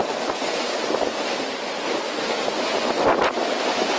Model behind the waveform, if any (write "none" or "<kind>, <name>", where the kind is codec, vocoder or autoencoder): none